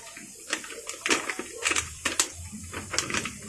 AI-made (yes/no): no